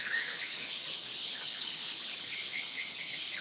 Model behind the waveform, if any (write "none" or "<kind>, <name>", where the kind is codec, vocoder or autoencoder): codec, HILCodec